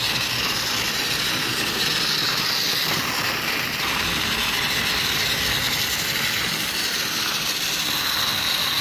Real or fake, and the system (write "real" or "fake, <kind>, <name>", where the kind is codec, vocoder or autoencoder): real